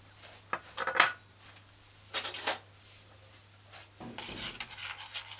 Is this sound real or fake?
real